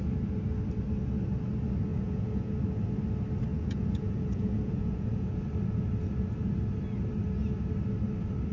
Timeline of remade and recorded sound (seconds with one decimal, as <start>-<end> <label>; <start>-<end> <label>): 0.0-1.9 recorded; 1.9-2.5 remade; 2.5-3.5 recorded; 3.5-5.4 remade; 5.4-8.5 recorded